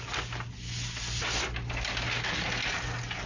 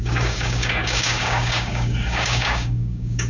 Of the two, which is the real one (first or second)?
first